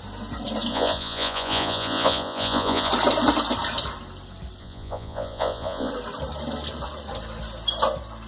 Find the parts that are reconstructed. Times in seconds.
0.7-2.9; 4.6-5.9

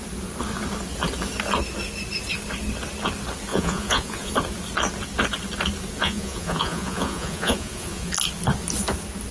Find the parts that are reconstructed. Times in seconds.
3.5-4.3; 6.0-8.1

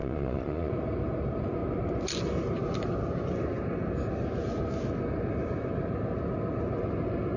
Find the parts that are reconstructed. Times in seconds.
0.0-0.7

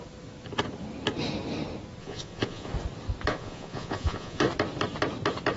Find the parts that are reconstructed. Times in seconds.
2.0-2.7; 3.3-4.4

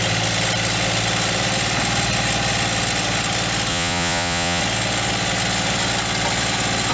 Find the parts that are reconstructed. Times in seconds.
3.7-4.6